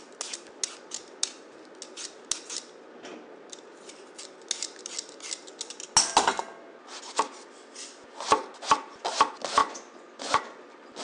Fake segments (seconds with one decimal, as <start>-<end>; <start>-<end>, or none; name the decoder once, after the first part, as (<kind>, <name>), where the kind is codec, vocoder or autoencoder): 9.6-10.4 (vocoder, Vocos)